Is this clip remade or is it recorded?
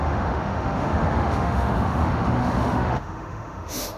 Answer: remade